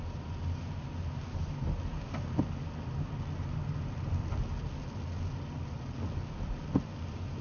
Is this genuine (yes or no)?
yes